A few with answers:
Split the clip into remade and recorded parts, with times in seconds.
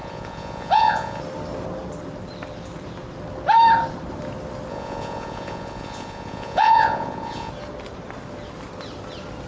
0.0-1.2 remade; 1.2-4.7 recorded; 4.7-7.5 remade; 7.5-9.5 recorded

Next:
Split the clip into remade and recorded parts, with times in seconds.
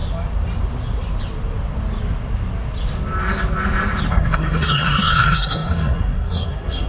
0.0-4.1 recorded; 4.1-6.9 remade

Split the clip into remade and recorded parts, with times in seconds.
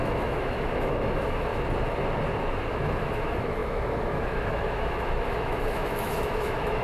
0.0-1.5 remade; 1.5-2.7 recorded; 2.7-6.8 remade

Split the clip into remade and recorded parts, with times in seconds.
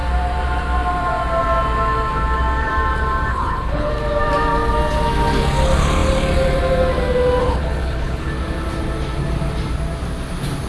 0.0-3.3 recorded; 3.3-3.9 remade; 3.9-7.4 recorded; 7.4-8.3 remade; 8.3-10.7 recorded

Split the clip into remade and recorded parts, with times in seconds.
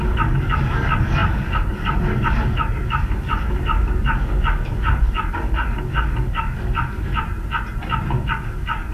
0.0-7.1 remade; 7.1-8.1 recorded; 8.1-8.9 remade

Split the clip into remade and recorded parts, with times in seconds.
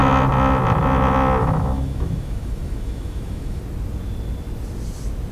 0.0-1.4 recorded; 1.4-3.6 remade; 3.6-5.3 recorded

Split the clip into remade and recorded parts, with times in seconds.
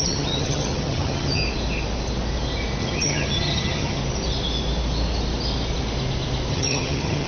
0.0-1.4 remade; 1.4-2.8 recorded; 2.8-4.0 remade; 4.0-6.5 recorded; 6.5-7.3 remade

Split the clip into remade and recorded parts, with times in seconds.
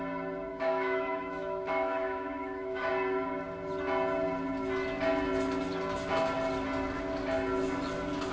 0.0-0.5 recorded; 0.5-2.9 remade; 2.9-8.3 recorded